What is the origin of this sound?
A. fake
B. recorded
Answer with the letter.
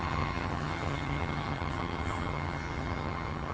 A